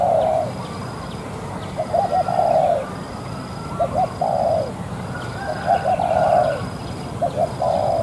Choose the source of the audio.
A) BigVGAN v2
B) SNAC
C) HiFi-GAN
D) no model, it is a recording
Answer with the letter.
D